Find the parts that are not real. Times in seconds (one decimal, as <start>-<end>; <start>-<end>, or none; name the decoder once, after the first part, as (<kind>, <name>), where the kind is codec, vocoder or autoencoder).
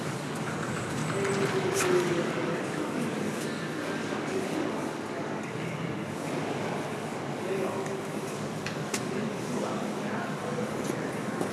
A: 0.0-1.0 (codec, DAC); 1.5-11.5